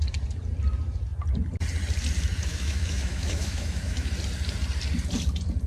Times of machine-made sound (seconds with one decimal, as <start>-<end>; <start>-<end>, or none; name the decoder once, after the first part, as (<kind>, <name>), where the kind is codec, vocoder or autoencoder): 2.5-4.1 (autoencoder, DAC-VAE)